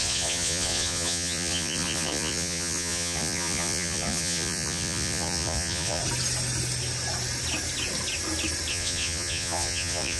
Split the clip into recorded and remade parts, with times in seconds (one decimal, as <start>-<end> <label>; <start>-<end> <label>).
0.0-6.0 remade; 6.0-8.7 recorded; 8.7-10.2 remade